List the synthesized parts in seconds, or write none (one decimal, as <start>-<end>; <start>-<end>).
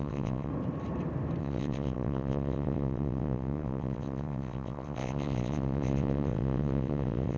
0.0-0.5; 1.4-7.4